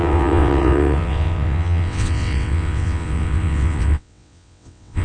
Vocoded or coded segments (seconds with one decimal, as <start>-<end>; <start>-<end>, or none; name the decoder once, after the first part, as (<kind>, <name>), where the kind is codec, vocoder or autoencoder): 0.0-5.0 (vocoder, WaveNeXt)